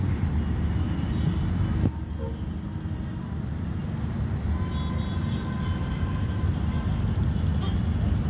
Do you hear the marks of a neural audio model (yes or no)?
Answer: no